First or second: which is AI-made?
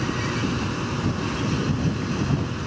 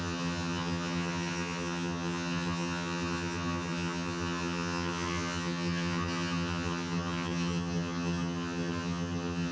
second